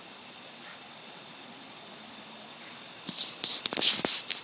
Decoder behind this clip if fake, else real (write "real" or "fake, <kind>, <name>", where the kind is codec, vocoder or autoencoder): fake, vocoder, BigVGAN v2